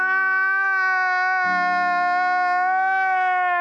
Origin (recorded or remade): recorded